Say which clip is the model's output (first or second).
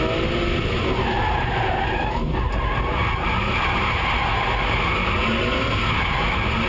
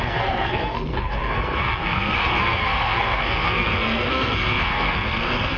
second